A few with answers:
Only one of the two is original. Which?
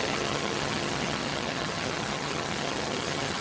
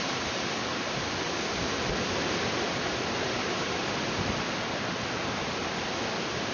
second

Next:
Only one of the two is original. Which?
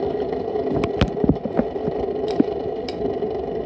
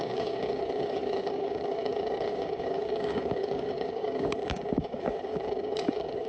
first